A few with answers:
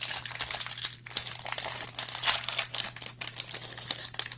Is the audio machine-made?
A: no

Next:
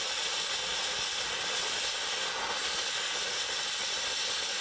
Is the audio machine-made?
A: no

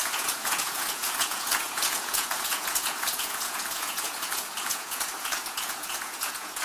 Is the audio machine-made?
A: yes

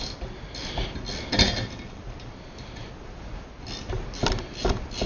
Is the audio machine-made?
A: no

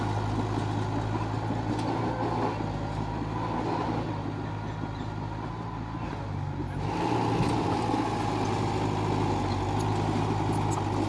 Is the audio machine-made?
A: no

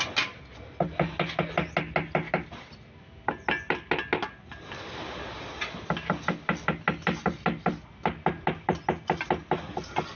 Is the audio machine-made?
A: no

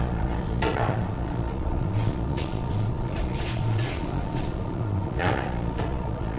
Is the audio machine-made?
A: yes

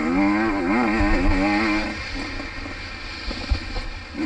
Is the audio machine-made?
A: no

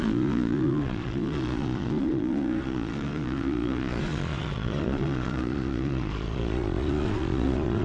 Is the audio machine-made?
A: yes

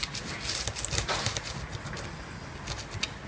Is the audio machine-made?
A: no